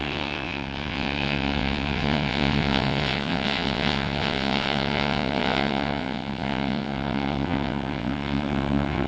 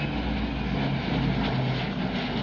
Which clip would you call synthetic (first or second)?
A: first